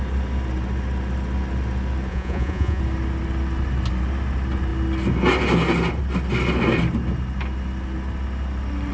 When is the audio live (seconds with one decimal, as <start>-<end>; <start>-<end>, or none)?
0.0-2.1; 2.8-8.9